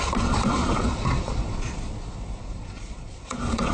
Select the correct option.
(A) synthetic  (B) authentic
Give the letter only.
A